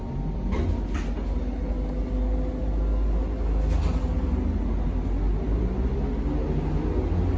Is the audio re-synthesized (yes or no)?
no